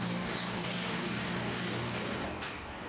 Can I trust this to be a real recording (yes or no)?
no